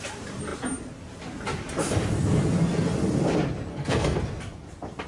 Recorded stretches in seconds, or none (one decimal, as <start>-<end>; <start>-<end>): 0.0-3.7; 4.2-5.1